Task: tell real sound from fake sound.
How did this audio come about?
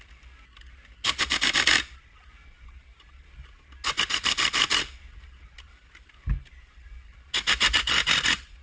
real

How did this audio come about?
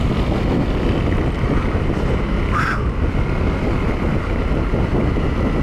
real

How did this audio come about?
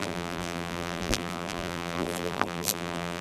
fake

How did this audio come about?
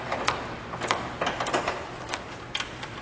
fake